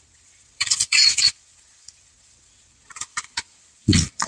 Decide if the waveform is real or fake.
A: fake